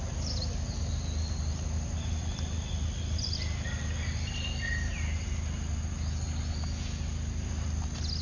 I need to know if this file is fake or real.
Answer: real